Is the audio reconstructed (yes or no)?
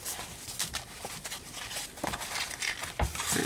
no